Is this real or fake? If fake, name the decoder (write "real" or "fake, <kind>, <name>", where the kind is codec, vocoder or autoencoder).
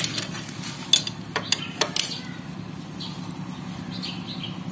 real